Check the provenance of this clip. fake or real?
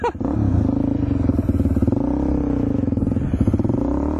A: real